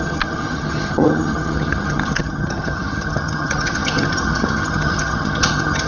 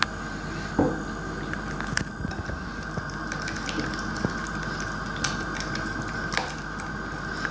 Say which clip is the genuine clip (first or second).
second